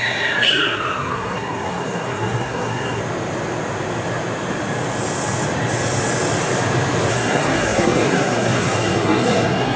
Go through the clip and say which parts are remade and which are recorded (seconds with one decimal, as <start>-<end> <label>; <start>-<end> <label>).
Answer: 0.0-3.0 remade; 3.0-7.1 recorded; 7.1-9.8 remade